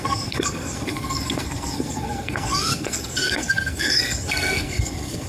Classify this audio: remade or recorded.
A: remade